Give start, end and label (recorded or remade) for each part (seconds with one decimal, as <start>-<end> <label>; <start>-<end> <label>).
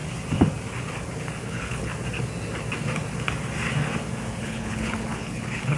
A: 0.0-1.4 recorded; 1.4-1.9 remade; 1.9-4.4 recorded; 4.4-5.8 remade